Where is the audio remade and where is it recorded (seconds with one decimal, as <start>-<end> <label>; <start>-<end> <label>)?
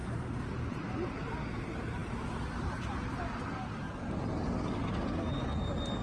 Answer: 0.0-6.0 recorded